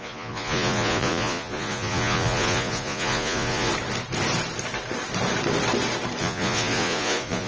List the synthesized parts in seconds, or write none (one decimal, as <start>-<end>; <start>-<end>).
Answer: 0.0-3.7; 6.2-7.5